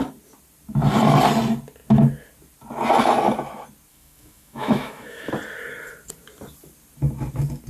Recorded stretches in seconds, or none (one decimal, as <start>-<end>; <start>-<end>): 0.0-3.9; 5.3-7.7